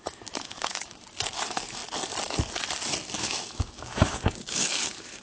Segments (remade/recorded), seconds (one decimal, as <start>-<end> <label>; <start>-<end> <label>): 0.0-1.8 remade; 1.8-3.2 recorded; 3.2-5.2 remade

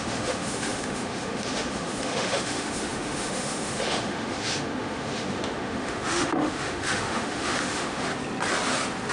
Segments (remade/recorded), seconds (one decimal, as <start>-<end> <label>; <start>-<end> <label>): 0.0-8.1 remade; 8.1-9.1 recorded